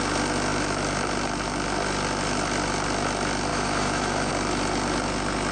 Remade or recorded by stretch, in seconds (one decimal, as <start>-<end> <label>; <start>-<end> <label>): 0.0-3.5 recorded; 3.5-4.3 remade; 4.3-5.5 recorded